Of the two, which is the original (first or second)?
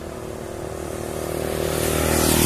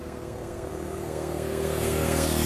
first